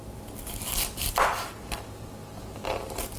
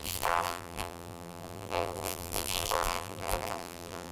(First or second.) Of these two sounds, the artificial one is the second